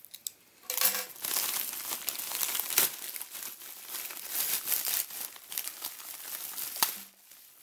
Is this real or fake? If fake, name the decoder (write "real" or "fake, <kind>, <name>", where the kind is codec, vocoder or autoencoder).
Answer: real